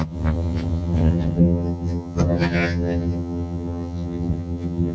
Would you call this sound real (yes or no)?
no